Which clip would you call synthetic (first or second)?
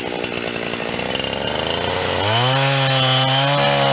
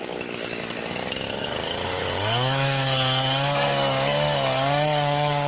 second